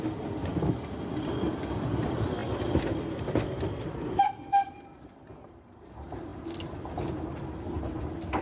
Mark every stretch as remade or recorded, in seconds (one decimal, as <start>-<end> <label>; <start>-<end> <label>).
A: 0.0-8.4 recorded